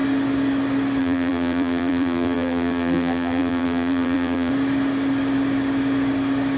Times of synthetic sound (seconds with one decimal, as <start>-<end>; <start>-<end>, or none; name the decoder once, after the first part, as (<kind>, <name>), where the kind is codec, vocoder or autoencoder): 1.0-4.5 (vocoder, BigVGAN v2)